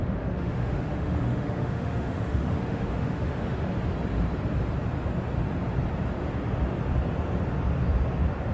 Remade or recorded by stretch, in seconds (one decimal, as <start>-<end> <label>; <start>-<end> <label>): 0.0-3.7 remade; 3.7-8.5 recorded